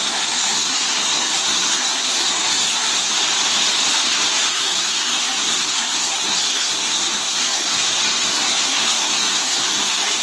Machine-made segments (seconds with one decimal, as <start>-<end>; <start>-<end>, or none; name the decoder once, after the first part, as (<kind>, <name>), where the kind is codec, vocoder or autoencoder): 0.0-3.1 (codec, SNAC); 4.0-10.2